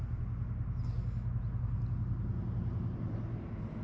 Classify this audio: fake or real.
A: real